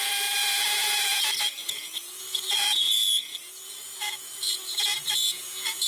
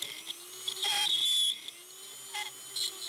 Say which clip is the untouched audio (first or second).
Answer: second